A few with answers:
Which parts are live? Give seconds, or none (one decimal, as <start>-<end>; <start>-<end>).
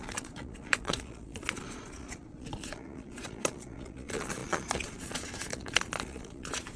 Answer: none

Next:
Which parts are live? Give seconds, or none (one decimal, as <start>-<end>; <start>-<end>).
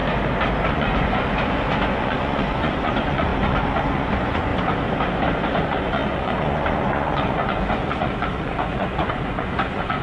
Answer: 0.0-0.7; 4.5-5.6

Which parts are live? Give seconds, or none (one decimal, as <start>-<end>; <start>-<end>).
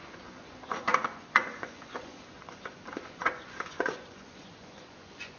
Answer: none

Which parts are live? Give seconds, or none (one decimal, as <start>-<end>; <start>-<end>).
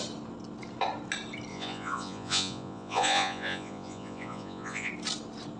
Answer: 0.0-1.5; 4.9-5.6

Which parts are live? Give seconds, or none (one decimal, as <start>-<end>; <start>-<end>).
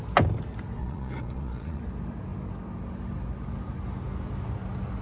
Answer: 0.0-0.8; 1.8-5.0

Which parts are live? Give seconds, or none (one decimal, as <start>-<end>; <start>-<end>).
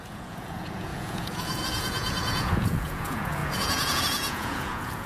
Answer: none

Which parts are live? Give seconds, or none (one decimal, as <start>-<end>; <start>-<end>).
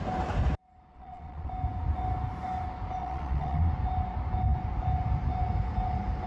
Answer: 0.0-0.9; 1.5-3.0; 3.7-6.3